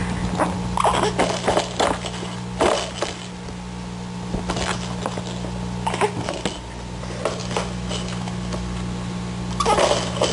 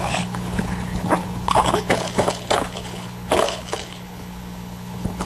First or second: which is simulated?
second